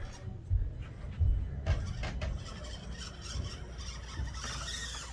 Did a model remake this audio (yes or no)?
no